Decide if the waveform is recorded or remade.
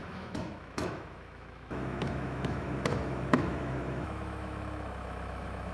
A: remade